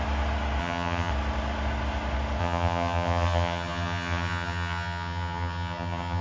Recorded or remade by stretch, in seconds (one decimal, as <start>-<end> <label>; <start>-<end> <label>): 0.0-0.6 recorded; 0.6-1.1 remade; 1.1-2.4 recorded; 2.4-6.2 remade